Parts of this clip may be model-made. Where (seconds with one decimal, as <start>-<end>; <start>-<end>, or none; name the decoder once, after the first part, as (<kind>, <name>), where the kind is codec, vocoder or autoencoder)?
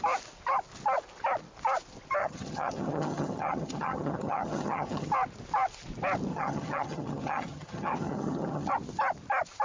2.2-5.1 (vocoder, HiFi-GAN); 6.3-8.7